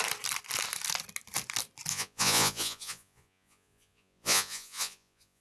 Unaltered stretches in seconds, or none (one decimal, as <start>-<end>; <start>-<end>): 0.0-1.9